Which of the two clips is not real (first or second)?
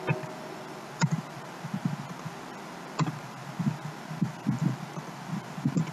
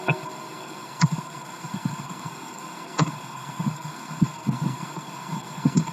second